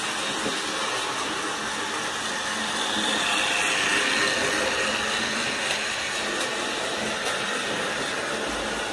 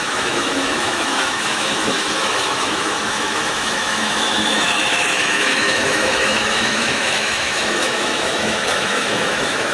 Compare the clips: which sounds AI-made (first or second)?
second